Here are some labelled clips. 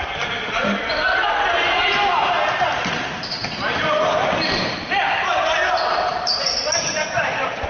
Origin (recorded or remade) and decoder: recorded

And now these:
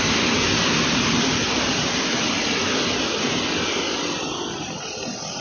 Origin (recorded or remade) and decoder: recorded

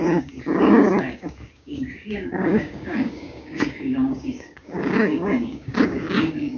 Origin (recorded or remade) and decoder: remade, codec, DAC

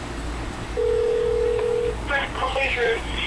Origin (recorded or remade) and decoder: remade, codec, DAC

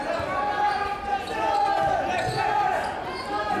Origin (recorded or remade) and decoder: recorded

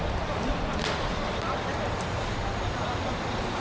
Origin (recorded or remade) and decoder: recorded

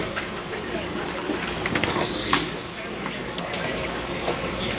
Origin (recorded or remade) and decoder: remade, codec, DAC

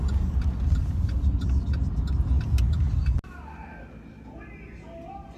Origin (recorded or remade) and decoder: recorded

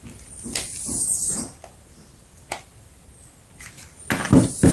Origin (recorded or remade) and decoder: recorded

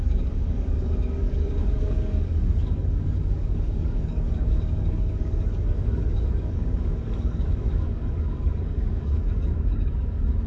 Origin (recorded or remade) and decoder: remade, codec, DAC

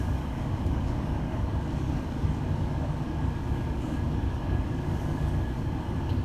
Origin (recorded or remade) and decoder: remade, codec, DAC